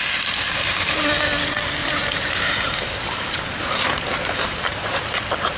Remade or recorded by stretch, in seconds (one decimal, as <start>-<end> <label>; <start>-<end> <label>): 0.0-1.8 recorded; 1.8-5.1 remade; 5.1-5.6 recorded